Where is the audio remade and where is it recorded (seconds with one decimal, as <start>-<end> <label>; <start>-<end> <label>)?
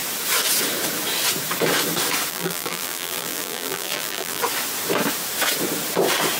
0.0-2.3 recorded; 2.3-4.4 remade; 4.4-6.4 recorded